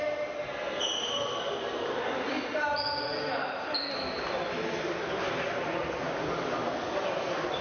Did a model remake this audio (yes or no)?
no